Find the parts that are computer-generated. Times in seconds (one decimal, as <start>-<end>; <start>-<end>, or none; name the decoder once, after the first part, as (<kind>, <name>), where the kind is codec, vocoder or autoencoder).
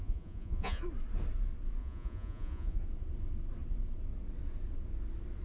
0.0-0.8 (vocoder, Vocos); 1.8-2.8